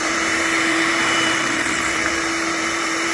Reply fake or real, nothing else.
fake